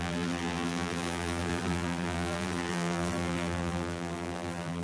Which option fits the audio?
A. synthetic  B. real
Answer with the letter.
A